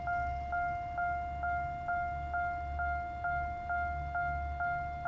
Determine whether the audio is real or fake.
real